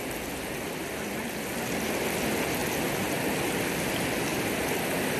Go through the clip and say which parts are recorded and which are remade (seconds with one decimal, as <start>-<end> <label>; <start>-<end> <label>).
0.0-5.2 recorded